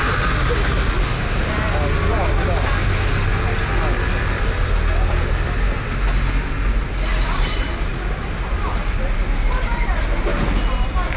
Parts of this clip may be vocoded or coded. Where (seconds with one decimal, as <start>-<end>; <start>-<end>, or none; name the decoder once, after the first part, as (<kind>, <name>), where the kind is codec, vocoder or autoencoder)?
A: 1.0-1.5 (autoencoder, DAC-VAE)